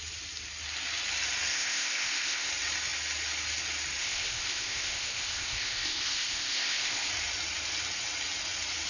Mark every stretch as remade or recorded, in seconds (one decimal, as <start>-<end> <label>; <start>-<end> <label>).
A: 0.0-1.5 recorded; 1.5-2.5 remade; 2.5-4.0 recorded; 4.0-7.1 remade; 7.1-8.9 recorded